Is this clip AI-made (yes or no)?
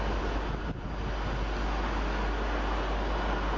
no